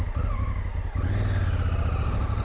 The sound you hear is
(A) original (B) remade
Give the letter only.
A